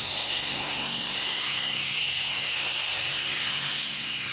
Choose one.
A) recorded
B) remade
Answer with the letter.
B